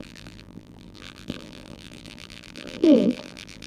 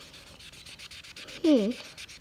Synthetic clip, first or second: first